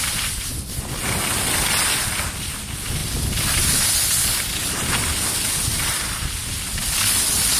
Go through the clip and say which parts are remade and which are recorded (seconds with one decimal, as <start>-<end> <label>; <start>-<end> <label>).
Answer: 0.0-7.6 recorded